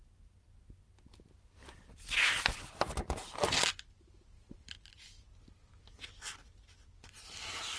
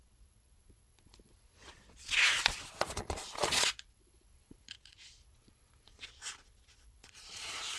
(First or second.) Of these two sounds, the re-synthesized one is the second